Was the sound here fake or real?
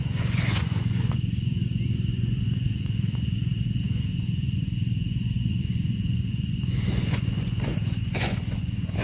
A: fake